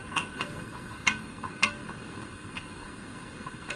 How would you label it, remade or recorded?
remade